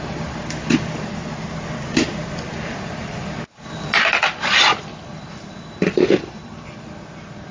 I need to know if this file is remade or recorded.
recorded